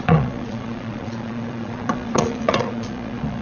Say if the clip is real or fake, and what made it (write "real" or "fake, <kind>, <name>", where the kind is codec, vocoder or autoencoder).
fake, vocoder, Vocos